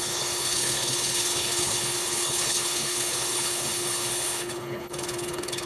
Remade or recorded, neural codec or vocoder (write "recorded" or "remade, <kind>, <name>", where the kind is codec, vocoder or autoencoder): remade, codec, HILCodec